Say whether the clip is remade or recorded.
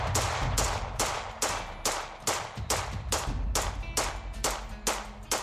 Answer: recorded